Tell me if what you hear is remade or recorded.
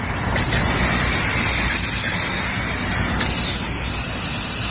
recorded